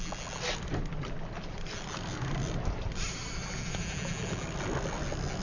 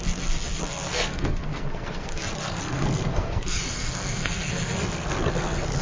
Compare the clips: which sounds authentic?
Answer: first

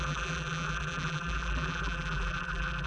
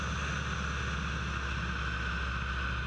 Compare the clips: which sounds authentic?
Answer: second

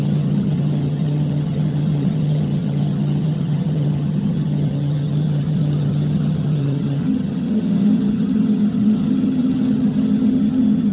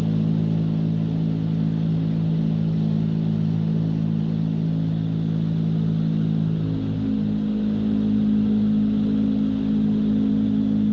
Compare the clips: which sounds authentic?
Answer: second